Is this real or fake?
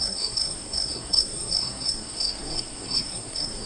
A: fake